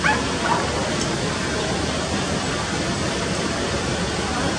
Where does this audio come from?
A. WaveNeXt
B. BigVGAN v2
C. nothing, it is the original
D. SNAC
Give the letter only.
C